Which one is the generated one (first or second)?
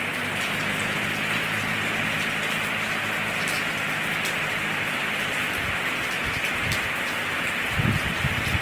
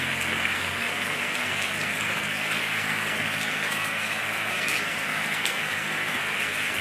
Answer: second